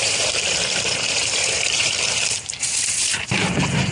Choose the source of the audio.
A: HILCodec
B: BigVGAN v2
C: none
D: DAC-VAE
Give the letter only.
B